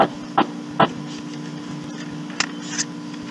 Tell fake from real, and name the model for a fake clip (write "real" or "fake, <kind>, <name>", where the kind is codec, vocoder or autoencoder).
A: real